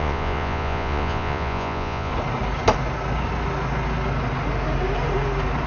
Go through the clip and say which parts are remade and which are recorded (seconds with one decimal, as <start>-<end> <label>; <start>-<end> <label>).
0.0-2.1 remade; 2.1-5.7 recorded